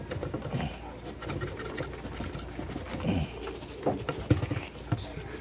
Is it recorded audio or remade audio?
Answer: recorded